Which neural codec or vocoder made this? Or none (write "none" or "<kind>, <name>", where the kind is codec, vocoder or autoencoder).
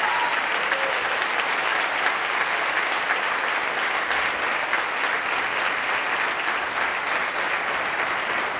none